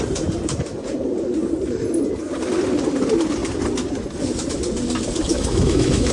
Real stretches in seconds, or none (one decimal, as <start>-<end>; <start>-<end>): 0.0-5.3